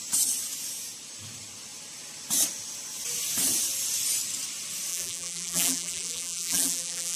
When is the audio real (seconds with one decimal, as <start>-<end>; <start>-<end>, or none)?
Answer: 0.0-4.9